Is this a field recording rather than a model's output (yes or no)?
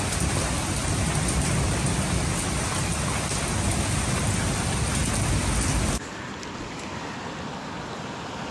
yes